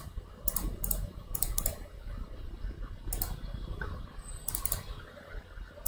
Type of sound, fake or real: real